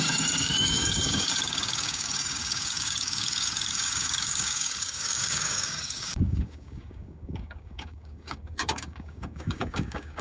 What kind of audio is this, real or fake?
fake